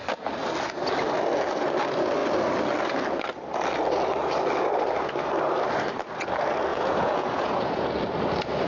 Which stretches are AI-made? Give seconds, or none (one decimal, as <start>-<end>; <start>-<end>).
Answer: 6.7-7.9